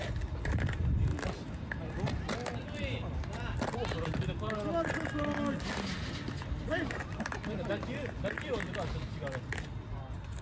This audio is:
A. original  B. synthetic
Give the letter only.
A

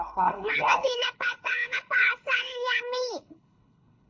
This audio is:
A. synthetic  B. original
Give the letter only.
A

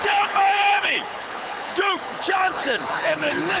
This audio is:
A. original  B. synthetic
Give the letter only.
B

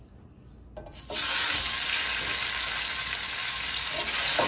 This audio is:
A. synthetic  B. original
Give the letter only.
B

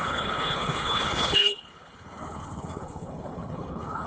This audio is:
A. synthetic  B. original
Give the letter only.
A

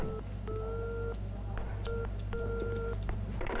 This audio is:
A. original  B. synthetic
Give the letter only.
A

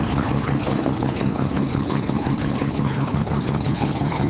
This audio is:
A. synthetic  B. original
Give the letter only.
A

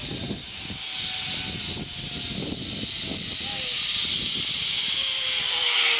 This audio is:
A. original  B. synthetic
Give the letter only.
A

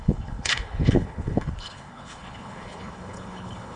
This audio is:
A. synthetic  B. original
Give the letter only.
A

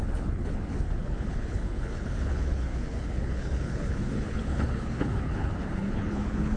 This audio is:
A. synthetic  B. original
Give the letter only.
A